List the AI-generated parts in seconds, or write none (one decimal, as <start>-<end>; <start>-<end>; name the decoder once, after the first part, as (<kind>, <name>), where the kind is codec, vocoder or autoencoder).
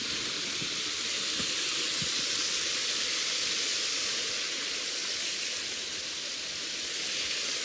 none